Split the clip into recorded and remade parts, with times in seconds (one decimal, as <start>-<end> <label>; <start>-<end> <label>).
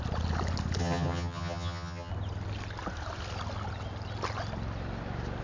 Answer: 0.0-0.8 recorded; 0.8-2.1 remade; 2.1-5.4 recorded